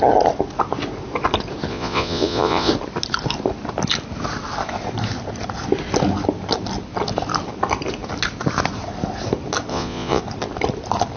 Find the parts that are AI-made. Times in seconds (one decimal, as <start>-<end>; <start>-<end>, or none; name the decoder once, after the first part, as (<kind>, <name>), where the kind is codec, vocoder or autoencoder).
1.7-2.7 (vocoder, Vocos); 9.7-10.2